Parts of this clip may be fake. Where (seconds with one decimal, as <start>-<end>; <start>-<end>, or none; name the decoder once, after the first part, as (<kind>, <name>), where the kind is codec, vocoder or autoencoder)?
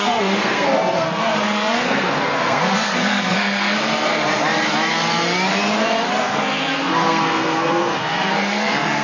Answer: 0.0-4.1 (codec, SNAC); 6.2-9.0